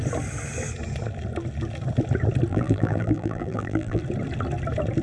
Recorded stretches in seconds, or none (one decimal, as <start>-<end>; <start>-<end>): 0.0-2.5; 4.0-5.0